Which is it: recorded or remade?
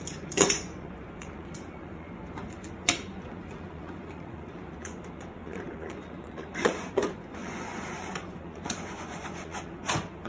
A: remade